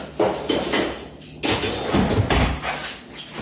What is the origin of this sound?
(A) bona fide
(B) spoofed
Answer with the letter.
A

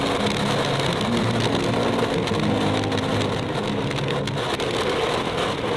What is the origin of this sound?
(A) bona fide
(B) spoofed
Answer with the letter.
A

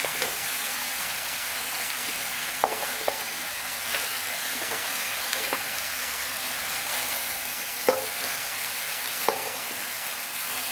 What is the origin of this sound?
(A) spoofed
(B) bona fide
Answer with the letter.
A